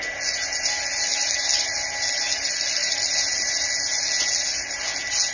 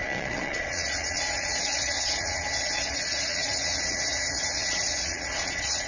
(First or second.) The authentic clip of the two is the first